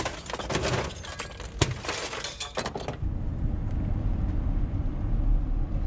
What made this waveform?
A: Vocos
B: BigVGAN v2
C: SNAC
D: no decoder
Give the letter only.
D